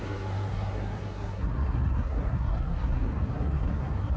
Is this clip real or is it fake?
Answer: fake